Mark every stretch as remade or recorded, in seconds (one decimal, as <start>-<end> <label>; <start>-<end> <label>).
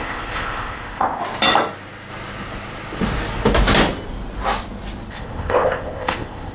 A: 0.0-1.2 remade; 1.2-5.1 recorded; 5.1-6.5 remade